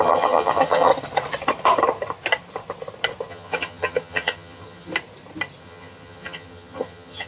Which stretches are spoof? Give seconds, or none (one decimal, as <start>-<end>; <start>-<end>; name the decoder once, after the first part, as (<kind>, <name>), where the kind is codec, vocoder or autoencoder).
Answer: 0.0-0.9 (vocoder, HiFi-GAN); 3.3-4.9; 5.6-7.3